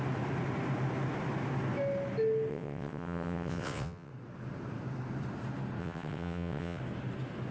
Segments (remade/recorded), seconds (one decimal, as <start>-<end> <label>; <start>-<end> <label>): 0.0-2.5 recorded; 2.5-4.1 remade; 4.1-5.8 recorded; 5.8-6.8 remade; 6.8-7.5 recorded